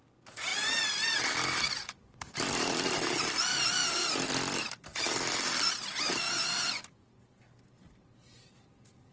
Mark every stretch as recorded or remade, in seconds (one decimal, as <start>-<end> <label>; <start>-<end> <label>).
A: 0.0-9.1 recorded